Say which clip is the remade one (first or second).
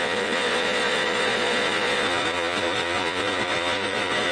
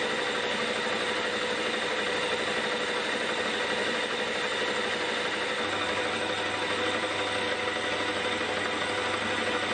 first